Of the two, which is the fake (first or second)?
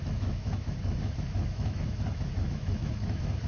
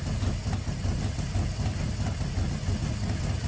first